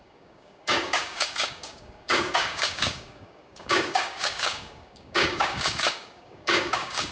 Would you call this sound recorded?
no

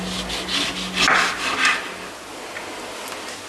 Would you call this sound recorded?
yes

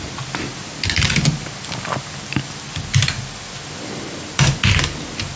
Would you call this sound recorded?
yes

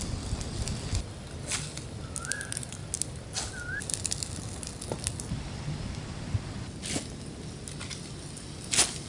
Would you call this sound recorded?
yes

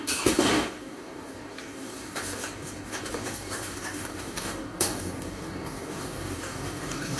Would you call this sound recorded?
no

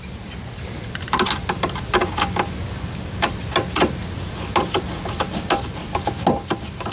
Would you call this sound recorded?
yes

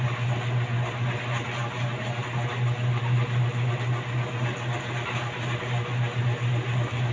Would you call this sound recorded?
yes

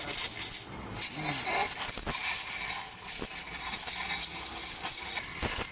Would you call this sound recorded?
yes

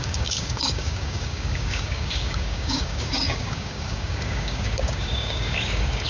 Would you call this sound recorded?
no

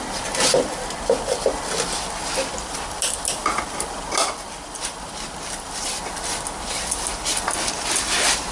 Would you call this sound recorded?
yes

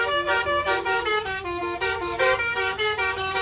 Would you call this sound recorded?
no